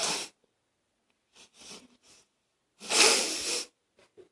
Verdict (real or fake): real